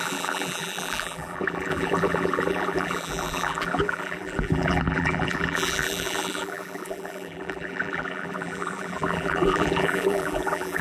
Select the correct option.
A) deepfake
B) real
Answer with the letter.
A